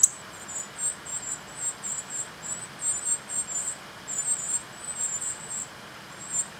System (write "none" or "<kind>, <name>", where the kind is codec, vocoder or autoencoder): none